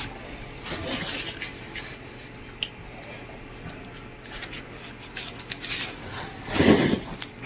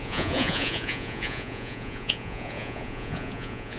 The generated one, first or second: second